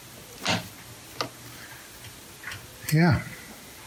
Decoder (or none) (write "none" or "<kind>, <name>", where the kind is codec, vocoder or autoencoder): none